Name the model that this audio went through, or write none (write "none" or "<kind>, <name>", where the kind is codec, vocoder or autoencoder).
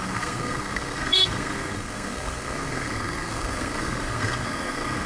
codec, SNAC